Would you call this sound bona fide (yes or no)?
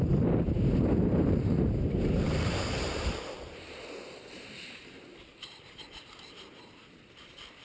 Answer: no